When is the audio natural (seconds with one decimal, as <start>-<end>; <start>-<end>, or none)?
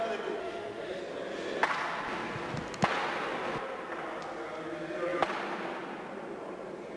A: 0.0-0.4; 1.0-7.0